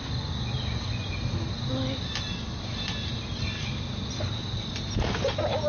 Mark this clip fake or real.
real